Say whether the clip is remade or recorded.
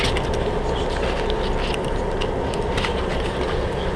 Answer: recorded